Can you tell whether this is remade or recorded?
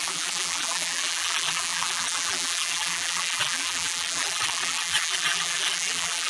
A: remade